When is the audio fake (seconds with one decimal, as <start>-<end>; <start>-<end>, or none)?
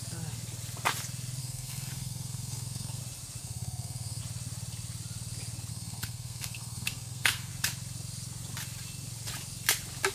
1.4-3.0; 3.4-4.2; 5.7-7.5